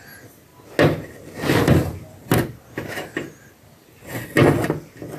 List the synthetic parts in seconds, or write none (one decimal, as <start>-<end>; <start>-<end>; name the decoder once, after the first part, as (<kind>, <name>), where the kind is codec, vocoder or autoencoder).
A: none

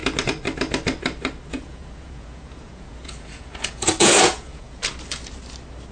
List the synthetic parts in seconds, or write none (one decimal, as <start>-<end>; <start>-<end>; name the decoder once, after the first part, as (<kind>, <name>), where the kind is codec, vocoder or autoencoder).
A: 1.5-4.8 (vocoder, Vocos)

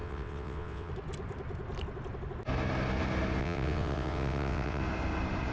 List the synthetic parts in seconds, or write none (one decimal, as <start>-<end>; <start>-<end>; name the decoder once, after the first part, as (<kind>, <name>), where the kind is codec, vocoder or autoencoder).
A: 0.0-0.9 (vocoder, WaveNeXt); 3.4-4.8